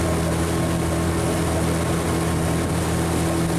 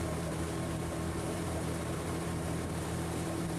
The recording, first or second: first